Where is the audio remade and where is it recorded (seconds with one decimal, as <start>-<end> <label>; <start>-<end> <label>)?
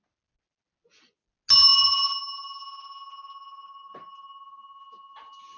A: 0.0-5.6 recorded